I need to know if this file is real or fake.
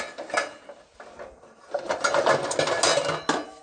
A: real